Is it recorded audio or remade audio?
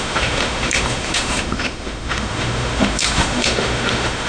remade